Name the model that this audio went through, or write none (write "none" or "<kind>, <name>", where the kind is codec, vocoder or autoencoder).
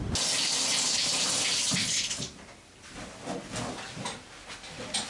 none